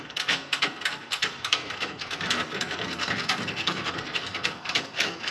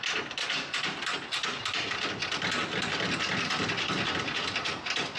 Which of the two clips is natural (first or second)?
second